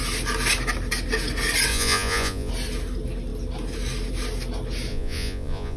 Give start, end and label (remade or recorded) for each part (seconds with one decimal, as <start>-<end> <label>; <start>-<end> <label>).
0.0-1.7 recorded; 1.7-2.5 remade; 2.5-4.9 recorded; 4.9-5.8 remade